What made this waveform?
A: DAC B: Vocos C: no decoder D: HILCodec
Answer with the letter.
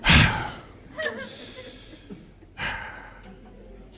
C